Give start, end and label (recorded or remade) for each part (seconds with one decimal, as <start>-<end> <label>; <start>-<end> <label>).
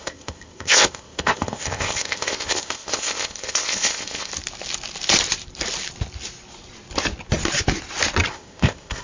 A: 0.0-4.3 remade; 4.3-8.3 recorded; 8.3-9.0 remade